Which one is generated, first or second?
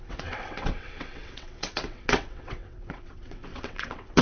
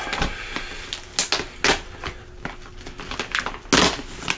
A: first